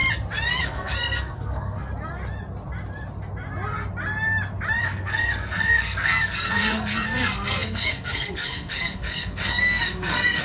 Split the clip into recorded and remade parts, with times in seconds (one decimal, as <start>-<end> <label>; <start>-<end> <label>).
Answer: 0.0-0.6 recorded; 0.6-1.9 remade; 1.9-4.8 recorded; 4.8-10.4 remade